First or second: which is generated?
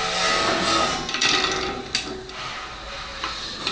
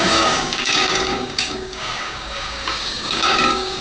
second